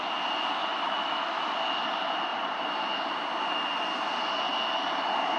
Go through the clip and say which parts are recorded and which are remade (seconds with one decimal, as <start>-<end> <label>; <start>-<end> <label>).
0.0-0.7 recorded; 0.7-1.5 remade; 1.5-5.4 recorded